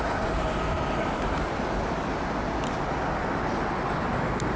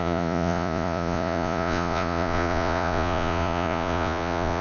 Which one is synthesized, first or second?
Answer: second